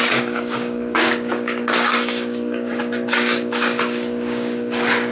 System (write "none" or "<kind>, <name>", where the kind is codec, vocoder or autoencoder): codec, DAC